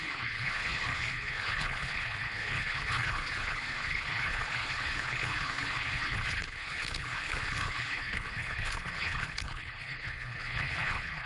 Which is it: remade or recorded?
remade